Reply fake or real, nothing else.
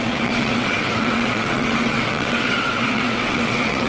fake